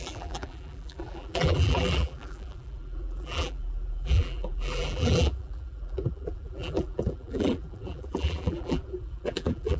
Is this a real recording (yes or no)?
no